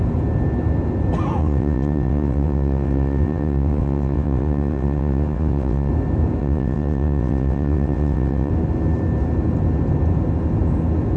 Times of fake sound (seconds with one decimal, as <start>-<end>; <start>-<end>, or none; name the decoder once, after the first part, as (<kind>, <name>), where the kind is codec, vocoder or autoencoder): 1.4-5.9 (vocoder, WaveNeXt); 6.4-8.5

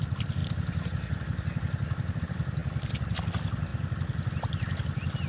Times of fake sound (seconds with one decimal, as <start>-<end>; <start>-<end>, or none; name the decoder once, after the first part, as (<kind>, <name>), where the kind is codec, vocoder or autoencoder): 0.0-0.4 (vocoder, BigVGAN v2); 2.2-3.7

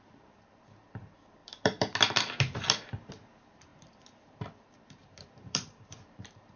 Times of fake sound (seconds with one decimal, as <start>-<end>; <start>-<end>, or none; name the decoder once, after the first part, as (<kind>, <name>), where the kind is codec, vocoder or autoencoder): 0.0-6.6 (vocoder, BigVGAN v2)

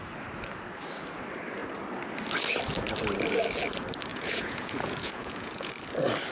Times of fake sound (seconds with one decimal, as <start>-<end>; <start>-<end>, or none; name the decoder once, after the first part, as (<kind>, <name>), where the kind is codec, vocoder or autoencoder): 4.1-5.7 (vocoder, Vocos)

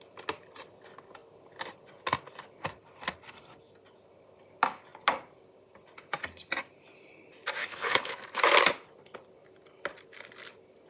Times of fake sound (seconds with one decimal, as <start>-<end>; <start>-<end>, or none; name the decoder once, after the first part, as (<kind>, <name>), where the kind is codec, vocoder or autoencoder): 7.6-8.1 (codec, HILCodec)

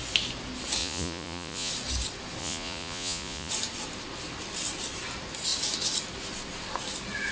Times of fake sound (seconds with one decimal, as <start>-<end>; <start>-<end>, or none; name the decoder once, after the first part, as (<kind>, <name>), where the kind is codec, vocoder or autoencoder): 0.8-1.7 (vocoder, Vocos); 2.4-3.5

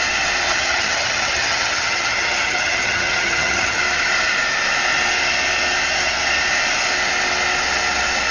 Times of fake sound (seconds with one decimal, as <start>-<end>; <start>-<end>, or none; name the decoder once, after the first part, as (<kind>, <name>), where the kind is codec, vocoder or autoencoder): 0.5-3.8 (vocoder, HiFi-GAN)

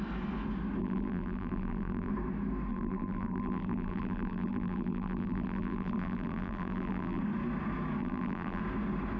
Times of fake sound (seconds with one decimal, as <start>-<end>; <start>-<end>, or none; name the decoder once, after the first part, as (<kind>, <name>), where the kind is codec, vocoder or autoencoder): 0.8-2.1 (vocoder, BigVGAN v2); 2.7-7.2; 8.0-8.6